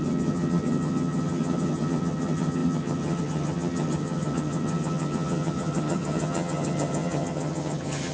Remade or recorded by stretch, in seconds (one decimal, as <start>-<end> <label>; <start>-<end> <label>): 0.0-8.1 remade